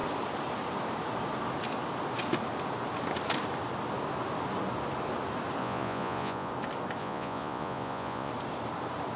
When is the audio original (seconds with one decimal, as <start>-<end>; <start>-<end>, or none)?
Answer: 0.0-5.6; 6.5-7.0; 8.3-9.2